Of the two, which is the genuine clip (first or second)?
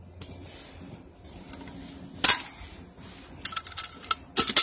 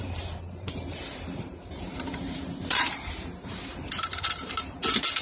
first